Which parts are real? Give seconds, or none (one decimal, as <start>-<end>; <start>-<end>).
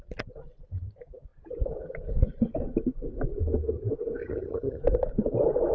0.0-4.2; 4.8-5.7